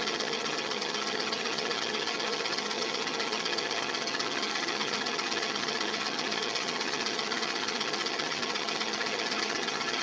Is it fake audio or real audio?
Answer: fake